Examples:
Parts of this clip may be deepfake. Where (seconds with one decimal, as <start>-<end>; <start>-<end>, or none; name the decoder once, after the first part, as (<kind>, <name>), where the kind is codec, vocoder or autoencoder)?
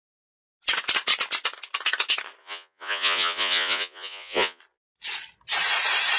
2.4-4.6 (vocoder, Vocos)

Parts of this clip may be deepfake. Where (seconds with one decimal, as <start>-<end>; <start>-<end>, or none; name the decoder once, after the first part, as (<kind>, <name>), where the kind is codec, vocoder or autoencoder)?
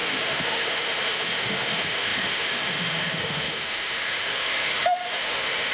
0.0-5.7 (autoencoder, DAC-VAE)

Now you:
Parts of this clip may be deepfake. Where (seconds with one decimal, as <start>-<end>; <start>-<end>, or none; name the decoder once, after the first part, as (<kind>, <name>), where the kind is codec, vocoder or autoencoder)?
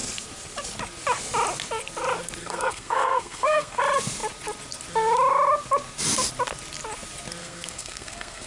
2.4-3.8 (codec, SNAC); 7.4-8.5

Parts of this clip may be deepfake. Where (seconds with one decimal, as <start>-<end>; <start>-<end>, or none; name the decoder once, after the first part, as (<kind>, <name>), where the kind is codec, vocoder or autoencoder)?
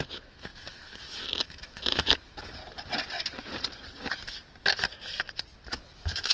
0.0-2.6 (autoencoder, DAC-VAE); 5.7-6.3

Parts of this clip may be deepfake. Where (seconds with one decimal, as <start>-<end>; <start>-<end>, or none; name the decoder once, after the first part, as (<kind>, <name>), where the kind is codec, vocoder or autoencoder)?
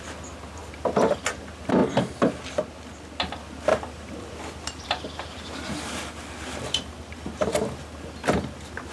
0.6-1.2 (vocoder, BigVGAN v2); 3.7-8.9